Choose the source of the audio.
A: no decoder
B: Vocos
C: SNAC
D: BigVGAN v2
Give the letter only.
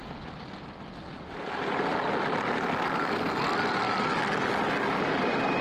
A